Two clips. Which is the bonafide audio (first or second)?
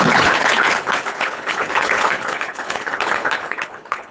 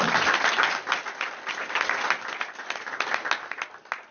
second